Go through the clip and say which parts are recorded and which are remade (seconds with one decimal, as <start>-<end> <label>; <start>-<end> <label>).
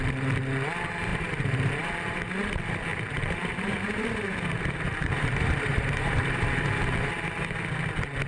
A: 0.0-1.1 recorded; 1.1-2.3 remade; 2.3-2.9 recorded; 2.9-6.7 remade; 6.7-8.3 recorded